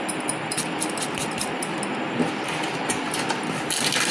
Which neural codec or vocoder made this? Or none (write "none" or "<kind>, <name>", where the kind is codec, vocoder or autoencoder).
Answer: none